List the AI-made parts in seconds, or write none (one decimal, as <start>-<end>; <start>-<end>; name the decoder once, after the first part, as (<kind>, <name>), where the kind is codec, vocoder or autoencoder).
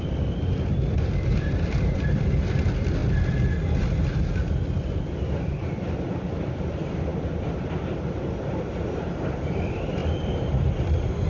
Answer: 0.0-3.0 (vocoder, BigVGAN v2); 6.4-10.0; 10.7-11.3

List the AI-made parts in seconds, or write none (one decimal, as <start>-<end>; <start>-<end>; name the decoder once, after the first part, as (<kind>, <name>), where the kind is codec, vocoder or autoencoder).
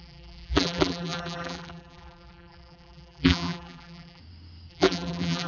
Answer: 0.0-4.2 (vocoder, BigVGAN v2); 4.7-5.5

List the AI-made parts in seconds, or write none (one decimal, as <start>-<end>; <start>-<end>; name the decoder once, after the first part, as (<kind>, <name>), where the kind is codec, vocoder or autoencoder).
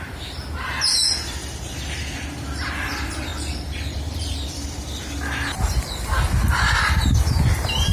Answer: 1.4-2.7 (vocoder, BigVGAN v2); 3.3-4.7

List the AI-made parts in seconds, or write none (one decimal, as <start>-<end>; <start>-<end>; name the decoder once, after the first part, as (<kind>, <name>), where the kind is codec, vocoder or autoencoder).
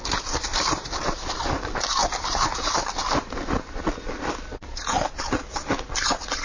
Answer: 0.5-3.8 (vocoder, BigVGAN v2); 4.8-5.4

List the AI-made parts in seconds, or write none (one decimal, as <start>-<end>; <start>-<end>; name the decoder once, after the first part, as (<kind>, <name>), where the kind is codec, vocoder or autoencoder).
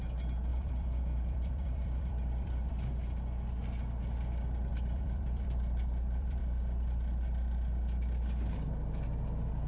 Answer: 0.5-2.7 (vocoder, BigVGAN v2); 4.7-6.4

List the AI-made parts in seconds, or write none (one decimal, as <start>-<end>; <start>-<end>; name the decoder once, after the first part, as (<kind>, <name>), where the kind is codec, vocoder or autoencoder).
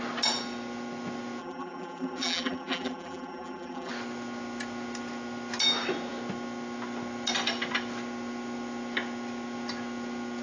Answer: 1.4-3.9 (vocoder, BigVGAN v2)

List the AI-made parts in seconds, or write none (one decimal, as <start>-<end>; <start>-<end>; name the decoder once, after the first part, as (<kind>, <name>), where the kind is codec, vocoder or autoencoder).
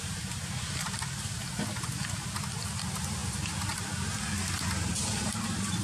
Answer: none